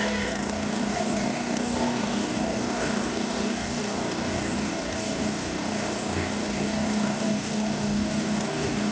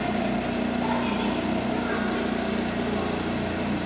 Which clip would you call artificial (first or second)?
first